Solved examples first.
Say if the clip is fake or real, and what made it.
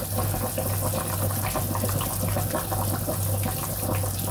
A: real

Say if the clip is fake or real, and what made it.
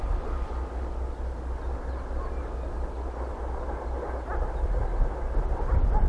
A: real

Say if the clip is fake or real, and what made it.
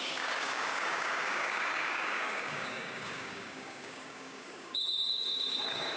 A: fake, codec, DAC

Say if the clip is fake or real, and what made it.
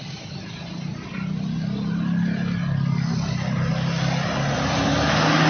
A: real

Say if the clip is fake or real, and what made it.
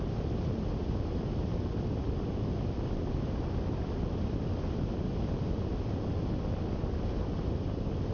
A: real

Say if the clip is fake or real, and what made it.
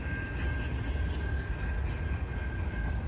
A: real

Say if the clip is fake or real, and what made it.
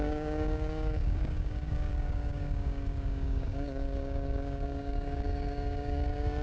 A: fake, codec, DAC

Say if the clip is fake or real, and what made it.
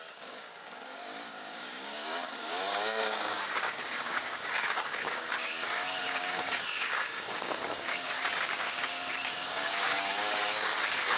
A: fake, codec, DAC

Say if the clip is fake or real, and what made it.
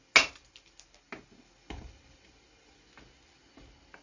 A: real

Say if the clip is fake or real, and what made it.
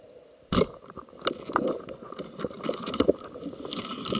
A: real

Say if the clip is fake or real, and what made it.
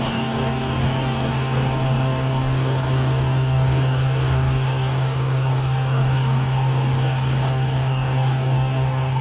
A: fake, codec, DAC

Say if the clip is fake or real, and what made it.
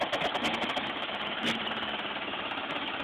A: real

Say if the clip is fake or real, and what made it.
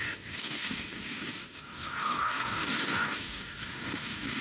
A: fake, codec, DAC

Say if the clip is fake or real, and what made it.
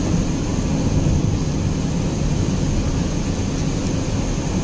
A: real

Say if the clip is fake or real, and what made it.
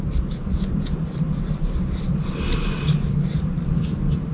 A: real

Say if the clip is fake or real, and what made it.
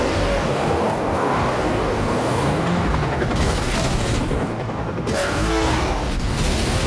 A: fake, codec, DAC